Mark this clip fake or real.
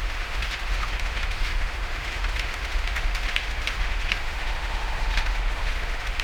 fake